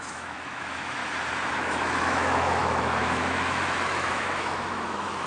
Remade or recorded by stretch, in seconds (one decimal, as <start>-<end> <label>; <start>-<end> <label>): 0.0-1.0 remade; 1.0-1.5 recorded; 1.5-5.3 remade